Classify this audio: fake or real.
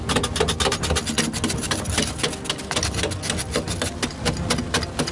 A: real